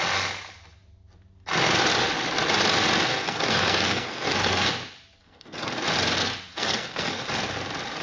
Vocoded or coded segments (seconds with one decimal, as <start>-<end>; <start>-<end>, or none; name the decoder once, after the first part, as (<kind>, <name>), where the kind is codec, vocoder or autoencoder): 3.1-4.7 (codec, SNAC); 5.2-5.7; 6.5-7.2